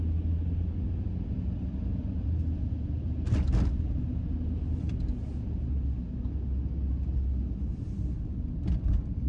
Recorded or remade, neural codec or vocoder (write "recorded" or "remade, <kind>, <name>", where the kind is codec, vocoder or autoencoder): recorded